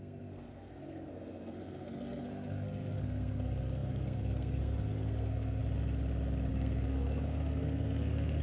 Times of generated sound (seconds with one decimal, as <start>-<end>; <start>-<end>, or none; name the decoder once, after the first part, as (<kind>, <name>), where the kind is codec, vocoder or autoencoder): 0.0-5.6 (codec, SNAC); 6.5-8.4